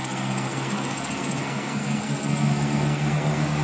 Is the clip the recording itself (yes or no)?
no